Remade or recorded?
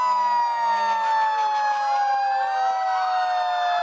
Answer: recorded